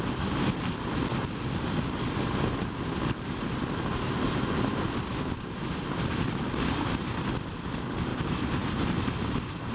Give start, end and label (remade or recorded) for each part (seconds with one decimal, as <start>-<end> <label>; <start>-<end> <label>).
0.0-8.1 recorded; 8.1-9.7 remade